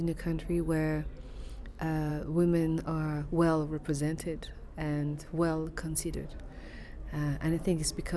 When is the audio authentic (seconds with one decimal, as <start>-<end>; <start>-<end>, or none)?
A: 0.0-8.2